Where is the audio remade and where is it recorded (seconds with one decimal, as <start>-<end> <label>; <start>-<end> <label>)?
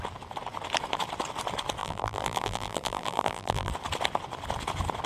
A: 0.0-1.8 recorded; 1.8-3.7 remade; 3.7-5.1 recorded